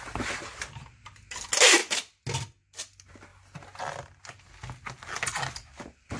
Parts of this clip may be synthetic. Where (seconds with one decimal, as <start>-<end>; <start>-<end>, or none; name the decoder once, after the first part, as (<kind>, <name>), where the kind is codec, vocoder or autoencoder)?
none